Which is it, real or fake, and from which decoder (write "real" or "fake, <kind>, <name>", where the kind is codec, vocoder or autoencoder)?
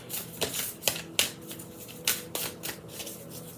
real